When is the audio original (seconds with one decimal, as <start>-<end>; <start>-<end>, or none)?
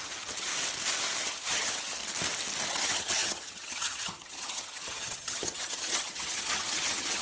0.5-1.2; 2.0-2.7